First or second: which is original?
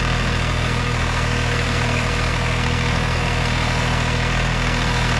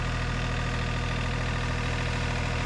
second